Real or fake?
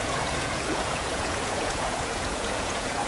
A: fake